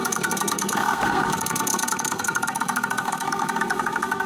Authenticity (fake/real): fake